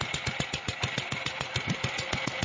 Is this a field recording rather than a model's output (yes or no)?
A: yes